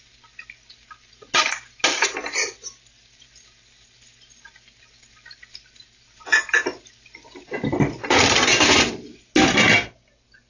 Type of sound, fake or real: real